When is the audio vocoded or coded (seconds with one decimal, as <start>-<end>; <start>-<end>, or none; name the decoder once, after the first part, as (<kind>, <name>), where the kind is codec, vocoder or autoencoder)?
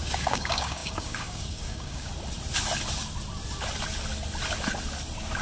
0.0-2.1 (codec, DAC)